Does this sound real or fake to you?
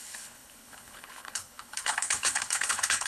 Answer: fake